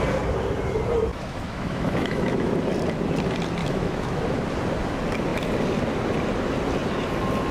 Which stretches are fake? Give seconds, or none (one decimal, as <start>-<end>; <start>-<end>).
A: 1.1-2.5; 3.6-4.2